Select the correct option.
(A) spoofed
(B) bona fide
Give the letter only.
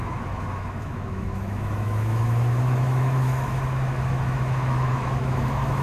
A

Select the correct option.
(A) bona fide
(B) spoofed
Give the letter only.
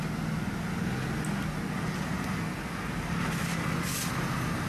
A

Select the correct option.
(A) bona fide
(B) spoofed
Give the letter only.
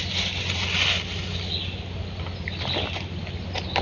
A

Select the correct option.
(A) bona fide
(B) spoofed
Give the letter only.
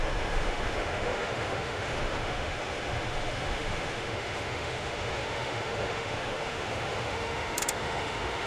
B